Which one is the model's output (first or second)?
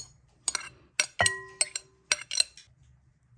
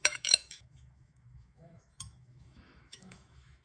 second